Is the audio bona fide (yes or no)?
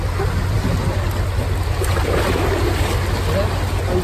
yes